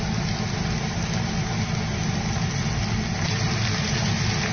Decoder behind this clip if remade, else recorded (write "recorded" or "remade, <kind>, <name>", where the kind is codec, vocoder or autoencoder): recorded